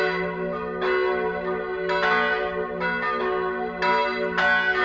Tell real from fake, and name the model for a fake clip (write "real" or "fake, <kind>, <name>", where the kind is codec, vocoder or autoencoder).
real